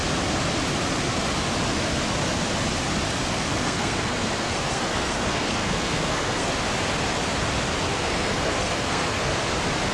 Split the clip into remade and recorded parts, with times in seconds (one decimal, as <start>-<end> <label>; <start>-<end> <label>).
0.0-3.3 recorded; 3.3-6.5 remade; 6.5-7.9 recorded; 7.9-9.3 remade; 9.3-9.9 recorded